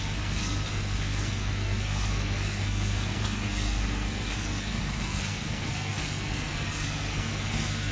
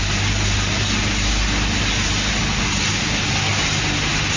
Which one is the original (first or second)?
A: second